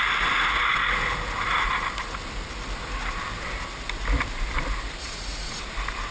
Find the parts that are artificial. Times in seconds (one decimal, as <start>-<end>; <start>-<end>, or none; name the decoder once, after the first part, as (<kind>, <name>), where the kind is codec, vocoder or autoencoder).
5.0-5.6 (vocoder, Vocos)